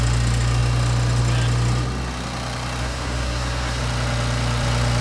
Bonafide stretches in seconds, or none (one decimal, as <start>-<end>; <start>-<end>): 0.0-2.8; 3.8-5.0